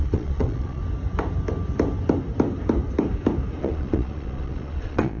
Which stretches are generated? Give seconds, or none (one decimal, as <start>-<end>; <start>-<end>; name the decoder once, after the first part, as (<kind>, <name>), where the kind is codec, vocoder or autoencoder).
0.0-0.8 (vocoder, Vocos); 3.6-5.2